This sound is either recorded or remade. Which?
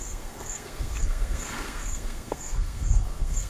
remade